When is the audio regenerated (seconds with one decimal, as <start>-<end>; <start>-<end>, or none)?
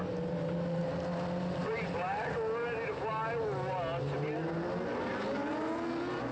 none